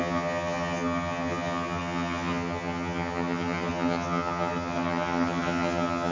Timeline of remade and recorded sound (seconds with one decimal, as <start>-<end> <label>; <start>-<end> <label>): 0.0-6.1 remade